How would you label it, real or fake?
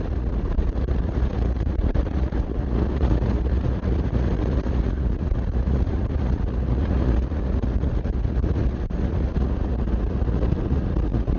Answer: fake